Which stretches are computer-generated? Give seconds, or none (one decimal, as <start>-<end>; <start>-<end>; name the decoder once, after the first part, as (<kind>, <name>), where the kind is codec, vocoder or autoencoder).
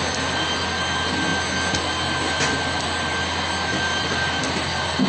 none